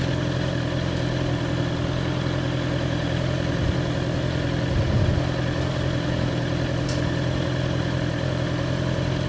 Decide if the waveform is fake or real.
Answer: real